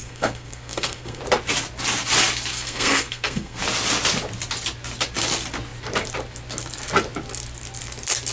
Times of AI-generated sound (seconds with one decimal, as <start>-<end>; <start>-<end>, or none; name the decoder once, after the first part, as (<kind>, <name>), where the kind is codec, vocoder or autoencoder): 0.0-1.2 (codec, SNAC); 2.5-3.6